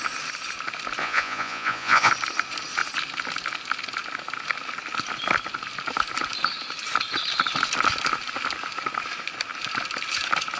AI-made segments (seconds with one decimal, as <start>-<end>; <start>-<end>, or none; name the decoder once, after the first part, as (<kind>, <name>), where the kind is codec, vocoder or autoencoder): 1.0-2.1 (vocoder, Vocos)